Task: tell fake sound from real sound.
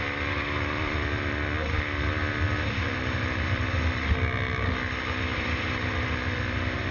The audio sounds real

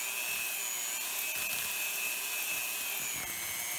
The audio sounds real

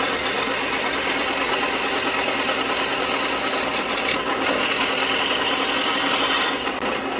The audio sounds real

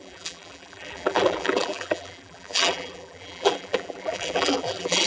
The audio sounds fake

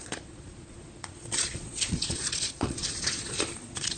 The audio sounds fake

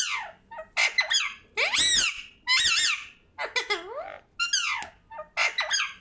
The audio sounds real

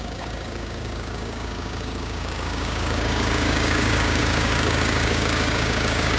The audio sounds fake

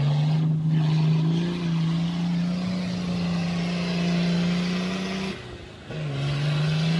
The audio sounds real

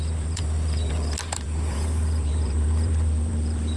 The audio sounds fake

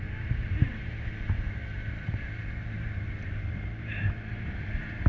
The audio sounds fake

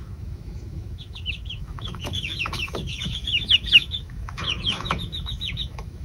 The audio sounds fake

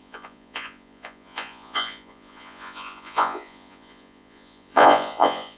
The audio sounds fake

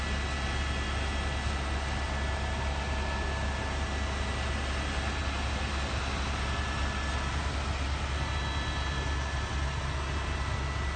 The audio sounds real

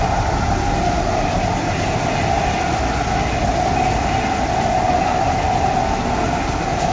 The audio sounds real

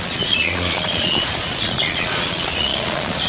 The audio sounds fake